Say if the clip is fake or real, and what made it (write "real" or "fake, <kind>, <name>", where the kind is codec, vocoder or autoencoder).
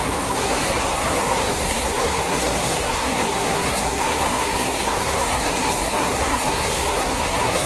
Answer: fake, codec, SNAC